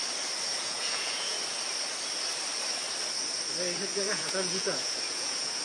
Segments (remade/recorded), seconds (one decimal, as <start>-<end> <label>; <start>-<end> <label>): 0.0-0.5 recorded; 0.5-1.4 remade; 1.4-3.9 recorded; 3.9-5.6 remade